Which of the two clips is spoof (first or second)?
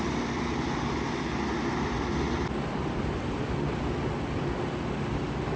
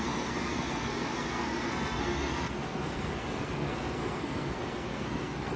second